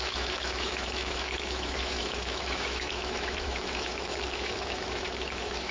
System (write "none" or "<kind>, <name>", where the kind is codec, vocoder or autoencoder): autoencoder, DAC-VAE